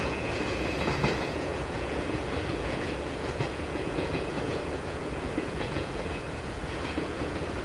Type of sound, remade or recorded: remade